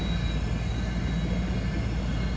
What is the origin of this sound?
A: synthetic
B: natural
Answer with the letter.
B